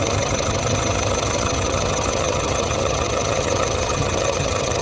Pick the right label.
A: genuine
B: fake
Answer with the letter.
B